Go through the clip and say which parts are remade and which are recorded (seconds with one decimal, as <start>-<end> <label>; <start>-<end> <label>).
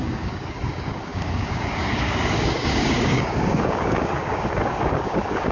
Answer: 0.0-5.5 remade